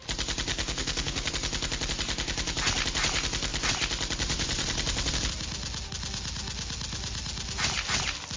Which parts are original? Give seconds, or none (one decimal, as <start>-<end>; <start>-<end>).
0.0-0.5; 1.3-8.4

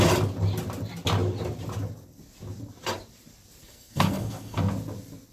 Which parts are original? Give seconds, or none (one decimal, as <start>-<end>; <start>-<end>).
0.0-3.6; 4.7-5.3

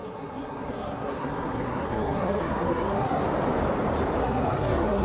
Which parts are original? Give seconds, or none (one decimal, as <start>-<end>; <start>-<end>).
3.2-4.2

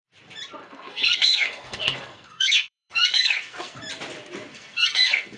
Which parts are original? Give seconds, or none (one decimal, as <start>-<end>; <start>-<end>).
0.0-0.6; 3.8-4.5